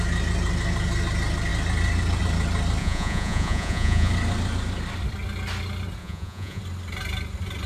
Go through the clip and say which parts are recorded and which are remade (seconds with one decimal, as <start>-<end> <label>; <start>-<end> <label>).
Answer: 0.0-2.8 recorded; 2.8-4.1 remade; 4.1-6.0 recorded; 6.0-6.6 remade; 6.6-7.7 recorded